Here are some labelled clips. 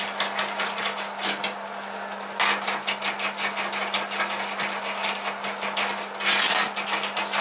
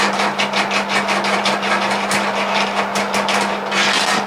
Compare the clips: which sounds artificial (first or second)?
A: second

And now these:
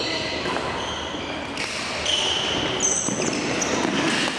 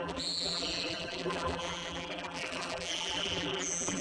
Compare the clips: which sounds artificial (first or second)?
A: second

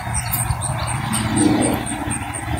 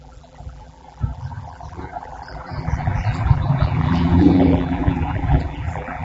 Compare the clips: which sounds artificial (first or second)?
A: second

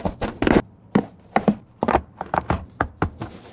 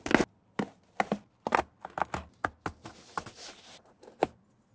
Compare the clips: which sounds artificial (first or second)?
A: first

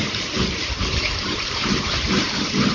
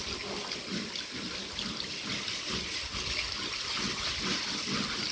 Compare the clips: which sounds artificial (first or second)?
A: first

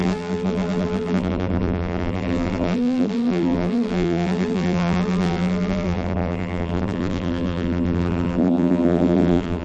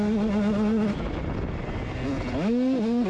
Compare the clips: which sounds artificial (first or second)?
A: first